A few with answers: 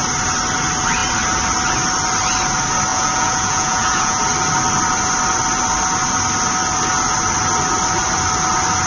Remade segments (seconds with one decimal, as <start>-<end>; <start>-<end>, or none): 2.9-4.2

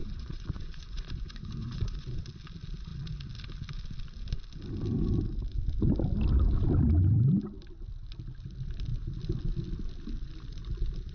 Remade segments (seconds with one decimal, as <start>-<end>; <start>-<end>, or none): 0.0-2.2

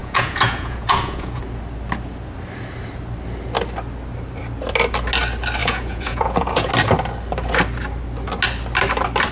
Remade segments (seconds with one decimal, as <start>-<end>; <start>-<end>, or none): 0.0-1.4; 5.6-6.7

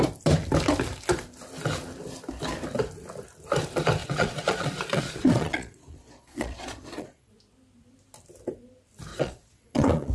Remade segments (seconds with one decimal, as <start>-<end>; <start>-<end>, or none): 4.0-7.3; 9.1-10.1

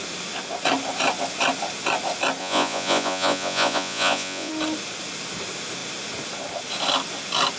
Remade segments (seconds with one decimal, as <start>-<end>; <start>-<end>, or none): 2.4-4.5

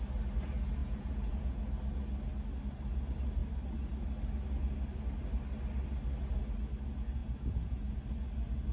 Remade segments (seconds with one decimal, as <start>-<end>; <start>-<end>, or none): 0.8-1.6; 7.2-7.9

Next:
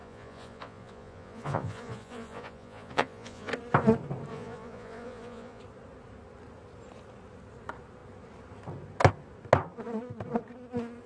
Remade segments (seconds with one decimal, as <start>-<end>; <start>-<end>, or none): 0.0-3.5; 4.3-5.6

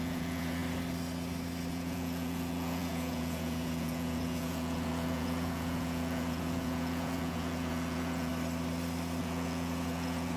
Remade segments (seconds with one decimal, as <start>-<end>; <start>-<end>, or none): 0.0-0.6; 1.7-8.3; 9.2-10.4